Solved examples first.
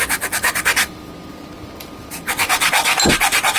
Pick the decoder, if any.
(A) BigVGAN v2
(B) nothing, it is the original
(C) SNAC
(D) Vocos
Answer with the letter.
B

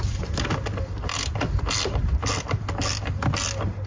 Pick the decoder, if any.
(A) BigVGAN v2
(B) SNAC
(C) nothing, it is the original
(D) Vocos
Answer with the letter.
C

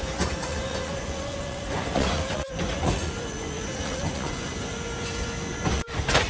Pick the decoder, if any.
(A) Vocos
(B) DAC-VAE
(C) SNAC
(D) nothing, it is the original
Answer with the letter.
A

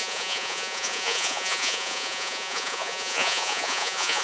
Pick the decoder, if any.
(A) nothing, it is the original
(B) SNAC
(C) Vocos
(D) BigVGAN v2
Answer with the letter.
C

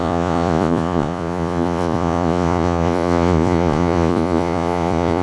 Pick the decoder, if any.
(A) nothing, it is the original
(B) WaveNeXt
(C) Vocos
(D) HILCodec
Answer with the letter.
C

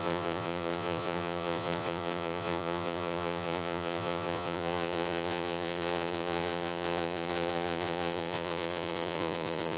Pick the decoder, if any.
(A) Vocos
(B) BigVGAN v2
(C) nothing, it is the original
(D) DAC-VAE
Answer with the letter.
A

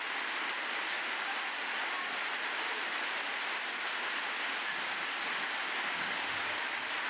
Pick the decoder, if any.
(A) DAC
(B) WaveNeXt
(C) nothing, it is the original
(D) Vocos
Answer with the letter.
C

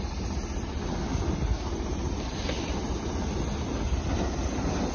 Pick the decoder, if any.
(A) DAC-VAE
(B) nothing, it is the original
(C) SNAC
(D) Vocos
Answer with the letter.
B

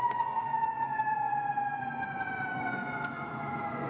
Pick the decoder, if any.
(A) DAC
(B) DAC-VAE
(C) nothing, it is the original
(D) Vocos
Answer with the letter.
D